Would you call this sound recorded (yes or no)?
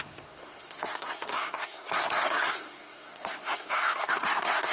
no